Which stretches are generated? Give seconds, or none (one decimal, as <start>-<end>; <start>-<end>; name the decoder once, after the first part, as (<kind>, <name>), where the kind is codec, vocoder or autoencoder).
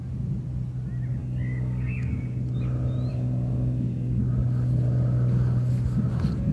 1.2-2.1 (codec, DAC); 3.1-4.2